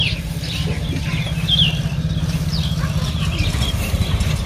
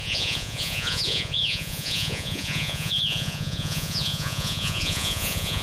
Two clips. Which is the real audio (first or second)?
first